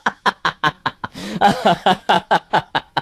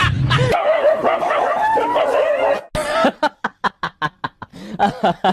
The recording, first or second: second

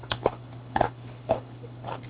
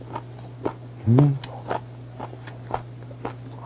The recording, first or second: second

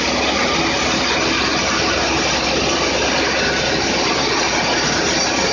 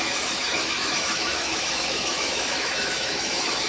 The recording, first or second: first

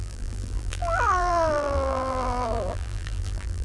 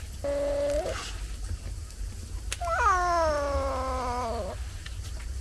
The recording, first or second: second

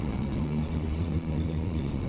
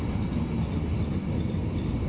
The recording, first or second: second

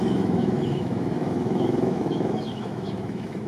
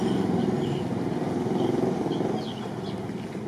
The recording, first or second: second